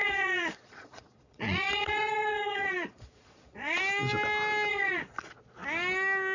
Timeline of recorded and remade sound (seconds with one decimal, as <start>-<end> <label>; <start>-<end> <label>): 0.0-3.8 remade; 3.8-4.7 recorded; 4.7-5.3 remade; 5.3-6.3 recorded